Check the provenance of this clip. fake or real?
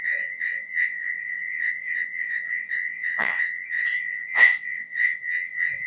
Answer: fake